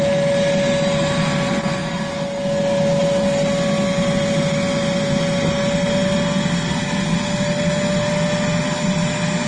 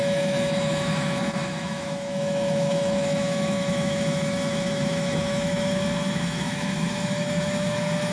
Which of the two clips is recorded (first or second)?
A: first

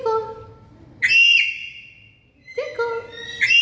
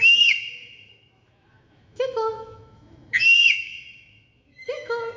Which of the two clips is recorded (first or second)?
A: first